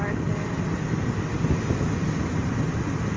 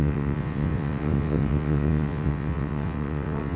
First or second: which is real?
first